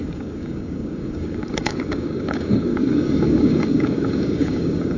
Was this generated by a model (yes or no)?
yes